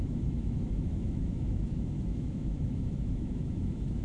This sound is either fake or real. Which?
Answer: fake